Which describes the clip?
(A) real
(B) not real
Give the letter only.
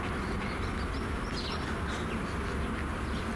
A